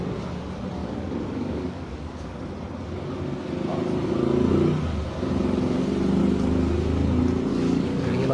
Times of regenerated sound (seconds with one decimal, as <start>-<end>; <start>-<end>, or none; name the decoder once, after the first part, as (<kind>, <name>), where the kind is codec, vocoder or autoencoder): 0.8-2.5 (codec, DAC); 7.5-8.3